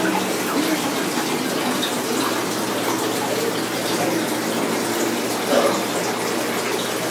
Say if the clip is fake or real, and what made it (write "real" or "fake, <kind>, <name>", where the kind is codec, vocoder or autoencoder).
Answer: real